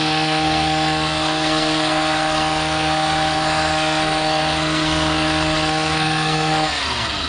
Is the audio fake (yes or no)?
yes